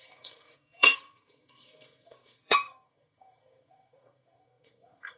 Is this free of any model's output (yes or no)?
no